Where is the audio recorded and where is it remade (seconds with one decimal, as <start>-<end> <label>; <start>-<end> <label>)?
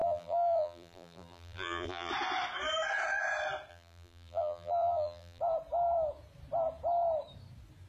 0.0-2.1 remade; 2.1-3.7 recorded; 3.7-5.4 remade; 5.4-7.9 recorded